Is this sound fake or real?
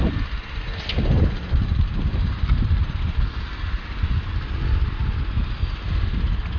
real